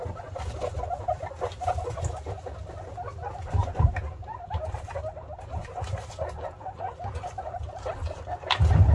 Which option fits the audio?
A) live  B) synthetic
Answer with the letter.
A